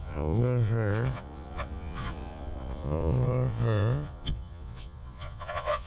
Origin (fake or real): fake